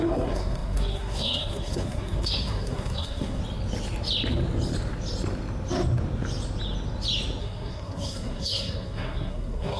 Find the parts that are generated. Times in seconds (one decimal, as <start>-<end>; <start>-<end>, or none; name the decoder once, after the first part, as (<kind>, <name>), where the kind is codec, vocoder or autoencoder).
0.0-3.4 (codec, SNAC); 7.4-9.8